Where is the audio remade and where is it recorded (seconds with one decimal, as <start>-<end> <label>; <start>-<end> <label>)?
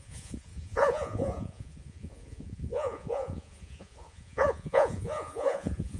0.0-6.0 remade